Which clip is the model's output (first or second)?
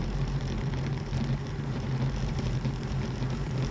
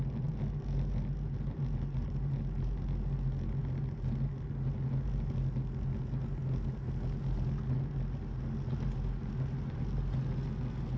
first